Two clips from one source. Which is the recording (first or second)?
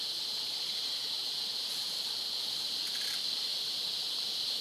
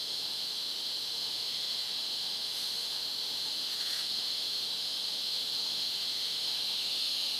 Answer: first